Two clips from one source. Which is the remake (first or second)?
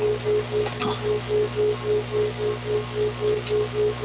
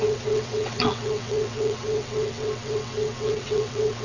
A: second